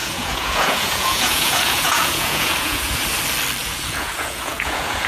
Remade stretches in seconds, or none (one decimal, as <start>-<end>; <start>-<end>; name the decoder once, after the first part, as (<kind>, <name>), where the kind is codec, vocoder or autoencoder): 0.0-3.0 (vocoder, Vocos); 3.6-5.1